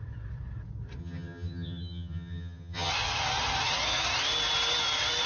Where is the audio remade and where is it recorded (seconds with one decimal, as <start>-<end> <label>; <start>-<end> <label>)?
0.0-1.0 recorded; 1.0-2.9 remade; 2.9-5.3 recorded